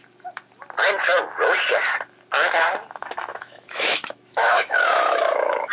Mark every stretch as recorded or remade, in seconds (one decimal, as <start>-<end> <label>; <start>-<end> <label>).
0.0-3.0 recorded; 3.0-5.7 remade